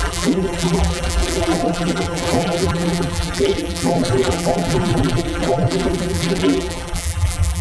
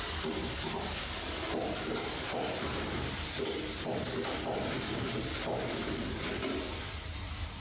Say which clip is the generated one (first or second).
first